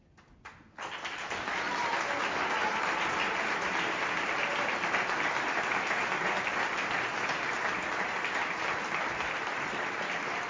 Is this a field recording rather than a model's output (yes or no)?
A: yes